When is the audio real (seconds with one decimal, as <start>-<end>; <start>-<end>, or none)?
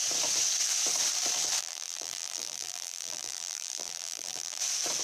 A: 0.0-1.6; 4.6-5.0